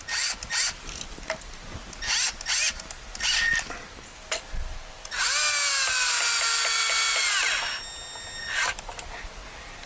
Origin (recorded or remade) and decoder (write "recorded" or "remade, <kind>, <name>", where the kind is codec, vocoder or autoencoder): recorded